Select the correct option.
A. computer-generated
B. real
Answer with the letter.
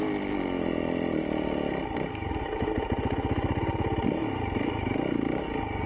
B